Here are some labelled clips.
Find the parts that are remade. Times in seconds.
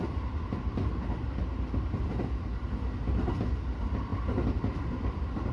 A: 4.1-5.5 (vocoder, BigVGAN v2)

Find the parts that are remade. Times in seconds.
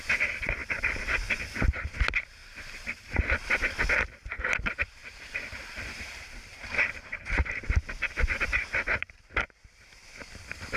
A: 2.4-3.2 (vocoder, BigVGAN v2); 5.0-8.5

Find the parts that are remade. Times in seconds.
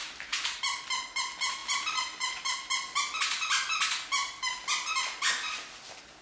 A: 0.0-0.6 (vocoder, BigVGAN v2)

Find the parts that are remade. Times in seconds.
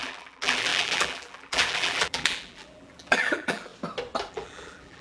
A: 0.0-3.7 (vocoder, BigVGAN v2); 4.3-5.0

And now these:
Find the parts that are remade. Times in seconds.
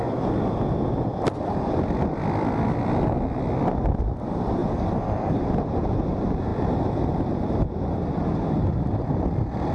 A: 1.1-2.8 (vocoder, BigVGAN v2); 4.6-5.3